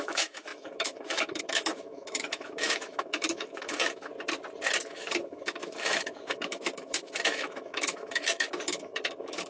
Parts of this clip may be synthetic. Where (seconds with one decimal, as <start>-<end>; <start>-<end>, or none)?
0.0-4.1; 4.8-9.5